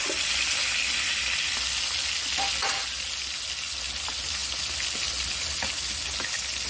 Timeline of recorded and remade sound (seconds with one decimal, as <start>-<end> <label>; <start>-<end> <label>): 0.0-6.7 recorded